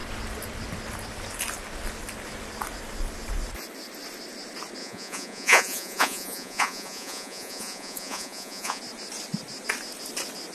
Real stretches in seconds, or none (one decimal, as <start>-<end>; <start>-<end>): 0.0-4.8; 8.8-10.5